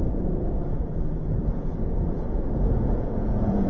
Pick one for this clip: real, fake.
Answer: fake